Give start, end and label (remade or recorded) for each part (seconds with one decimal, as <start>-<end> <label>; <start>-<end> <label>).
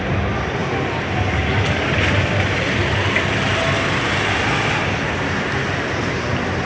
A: 0.0-6.7 recorded